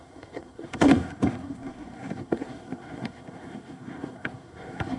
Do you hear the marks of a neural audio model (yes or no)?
yes